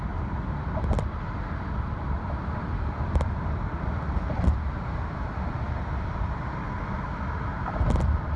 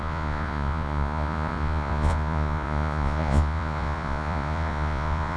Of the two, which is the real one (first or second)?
first